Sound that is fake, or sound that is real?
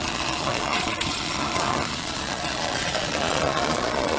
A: fake